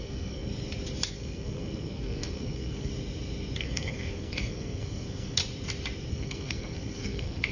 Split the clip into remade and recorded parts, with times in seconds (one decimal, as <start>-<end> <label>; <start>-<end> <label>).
0.0-0.5 remade; 0.5-1.1 recorded; 1.1-2.9 remade; 2.9-3.6 recorded; 3.6-5.4 remade; 5.4-6.1 recorded; 6.1-7.5 remade